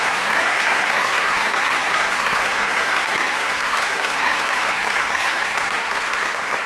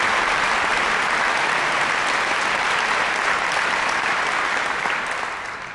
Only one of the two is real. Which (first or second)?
second